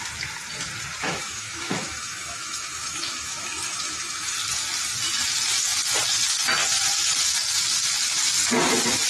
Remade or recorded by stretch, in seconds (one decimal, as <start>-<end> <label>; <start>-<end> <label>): 0.0-1.0 recorded; 1.0-4.3 remade; 4.3-9.1 recorded